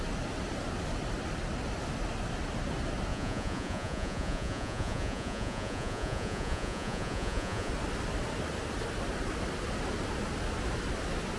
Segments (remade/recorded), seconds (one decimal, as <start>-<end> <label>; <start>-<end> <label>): 0.0-3.1 recorded; 3.1-7.7 remade; 7.7-11.4 recorded